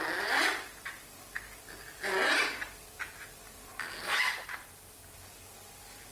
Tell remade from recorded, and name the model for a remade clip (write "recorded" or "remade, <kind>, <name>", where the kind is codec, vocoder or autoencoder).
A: recorded